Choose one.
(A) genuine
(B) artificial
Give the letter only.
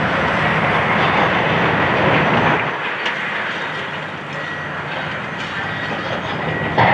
A